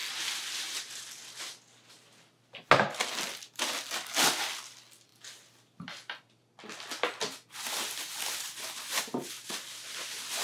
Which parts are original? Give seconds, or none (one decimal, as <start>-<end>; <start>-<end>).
0.0-10.4